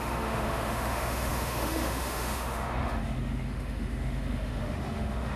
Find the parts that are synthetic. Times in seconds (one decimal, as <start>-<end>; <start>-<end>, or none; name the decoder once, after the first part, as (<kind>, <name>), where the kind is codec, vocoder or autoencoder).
0.0-5.4 (autoencoder, DAC-VAE)

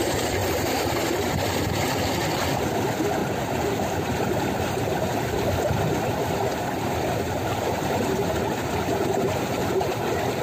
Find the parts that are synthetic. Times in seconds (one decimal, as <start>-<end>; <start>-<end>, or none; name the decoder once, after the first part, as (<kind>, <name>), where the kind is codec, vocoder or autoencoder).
0.4-1.7 (vocoder, BigVGAN v2); 3.2-4.8; 6.5-10.0

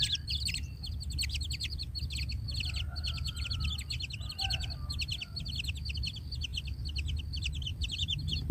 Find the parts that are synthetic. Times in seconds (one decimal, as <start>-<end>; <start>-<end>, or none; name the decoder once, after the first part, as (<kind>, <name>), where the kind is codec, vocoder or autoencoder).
7.7-8.5 (vocoder, BigVGAN v2)